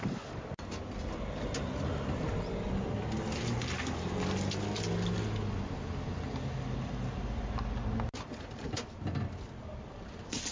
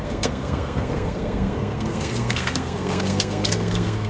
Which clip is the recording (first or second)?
first